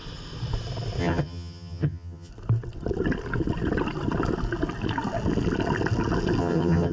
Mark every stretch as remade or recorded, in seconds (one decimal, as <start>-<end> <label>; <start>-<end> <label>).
0.0-1.0 recorded; 1.0-2.3 remade; 2.3-6.4 recorded; 6.4-6.9 remade